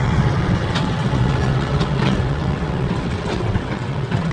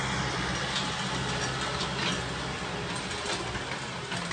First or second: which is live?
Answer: second